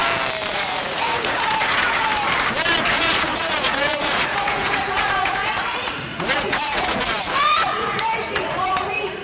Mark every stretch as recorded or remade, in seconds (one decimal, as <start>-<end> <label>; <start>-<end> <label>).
0.0-0.5 recorded; 0.5-2.1 remade; 2.1-2.8 recorded; 2.8-9.2 remade